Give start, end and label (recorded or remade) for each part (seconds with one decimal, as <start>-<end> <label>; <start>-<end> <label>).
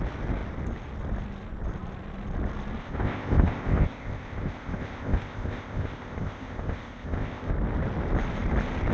0.0-2.8 recorded; 2.8-7.5 remade; 7.5-8.9 recorded